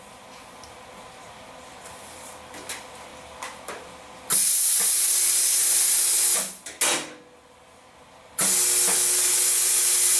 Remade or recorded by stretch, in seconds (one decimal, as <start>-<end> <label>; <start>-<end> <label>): 0.0-10.2 recorded